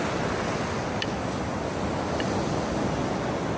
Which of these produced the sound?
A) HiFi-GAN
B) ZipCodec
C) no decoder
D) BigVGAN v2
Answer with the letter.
C